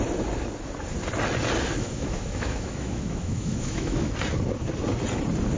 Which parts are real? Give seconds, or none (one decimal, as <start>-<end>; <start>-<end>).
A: 0.0-1.7; 4.1-5.6